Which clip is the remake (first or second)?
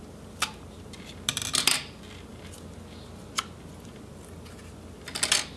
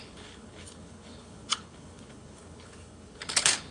second